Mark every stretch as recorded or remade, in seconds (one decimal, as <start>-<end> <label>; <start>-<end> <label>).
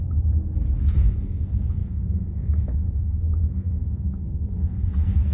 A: 0.0-0.8 recorded; 0.8-5.3 remade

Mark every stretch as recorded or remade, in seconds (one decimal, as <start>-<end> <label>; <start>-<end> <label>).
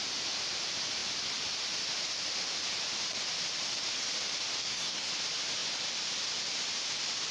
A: 0.0-4.6 recorded; 4.6-5.1 remade; 5.1-7.3 recorded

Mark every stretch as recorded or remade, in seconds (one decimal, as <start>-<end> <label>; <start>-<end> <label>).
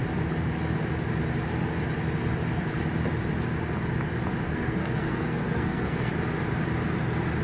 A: 0.0-4.5 recorded; 4.5-6.1 remade; 6.1-7.4 recorded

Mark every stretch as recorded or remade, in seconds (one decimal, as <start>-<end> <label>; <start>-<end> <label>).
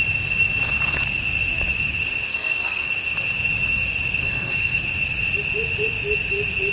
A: 0.0-2.3 recorded; 2.3-2.9 remade; 2.9-4.2 recorded; 4.2-4.8 remade; 4.8-6.7 recorded